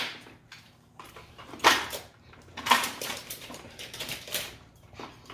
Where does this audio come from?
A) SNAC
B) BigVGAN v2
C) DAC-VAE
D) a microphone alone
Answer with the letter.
B